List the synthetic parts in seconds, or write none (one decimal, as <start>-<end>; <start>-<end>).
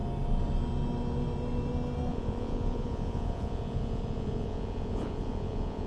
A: 2.1-5.9